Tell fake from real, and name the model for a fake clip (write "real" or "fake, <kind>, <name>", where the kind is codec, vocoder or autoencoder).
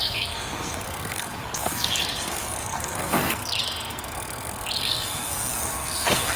fake, codec, SNAC